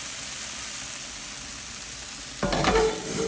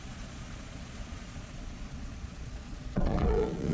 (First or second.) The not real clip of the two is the second